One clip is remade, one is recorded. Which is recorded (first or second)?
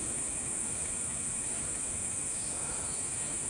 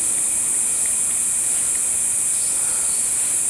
second